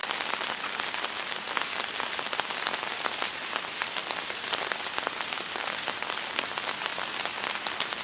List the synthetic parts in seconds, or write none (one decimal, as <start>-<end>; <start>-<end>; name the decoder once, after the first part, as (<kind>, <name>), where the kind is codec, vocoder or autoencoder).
none